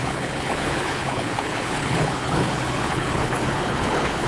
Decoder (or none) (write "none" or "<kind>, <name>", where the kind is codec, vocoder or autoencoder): codec, HILCodec